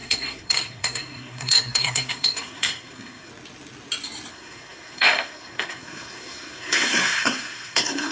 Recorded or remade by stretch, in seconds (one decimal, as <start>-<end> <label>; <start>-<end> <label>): 0.0-3.3 remade; 3.3-4.3 recorded; 4.3-8.1 remade